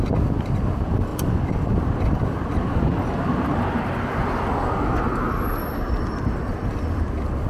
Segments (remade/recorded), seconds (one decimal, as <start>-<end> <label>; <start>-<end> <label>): 0.0-7.5 recorded